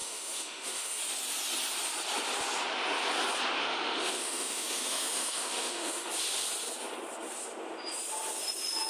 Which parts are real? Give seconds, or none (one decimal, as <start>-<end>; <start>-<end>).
1.0-3.6; 6.1-8.9